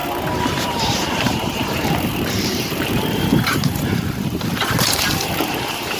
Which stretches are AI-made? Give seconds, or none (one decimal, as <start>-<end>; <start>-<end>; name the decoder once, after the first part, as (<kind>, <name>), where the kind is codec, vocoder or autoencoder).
0.5-6.0 (vocoder, BigVGAN v2)